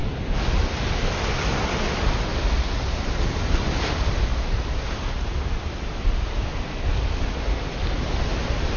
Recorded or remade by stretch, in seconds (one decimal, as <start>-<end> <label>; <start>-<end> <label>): 0.0-8.8 recorded